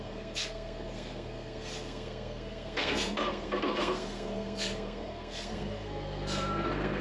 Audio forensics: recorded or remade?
remade